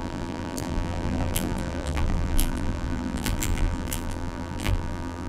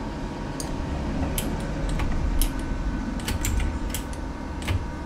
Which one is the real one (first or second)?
second